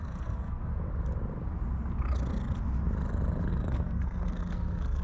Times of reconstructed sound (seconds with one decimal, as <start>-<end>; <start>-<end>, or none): 0.0-0.7; 3.5-5.0